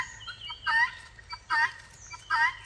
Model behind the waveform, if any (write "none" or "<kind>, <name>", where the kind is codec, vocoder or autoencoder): none